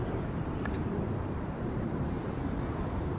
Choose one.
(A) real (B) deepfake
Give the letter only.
B